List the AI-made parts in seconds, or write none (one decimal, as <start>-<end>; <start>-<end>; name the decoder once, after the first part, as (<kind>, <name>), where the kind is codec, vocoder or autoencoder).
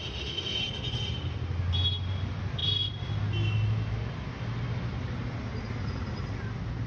0.0-0.6 (autoencoder, DAC-VAE)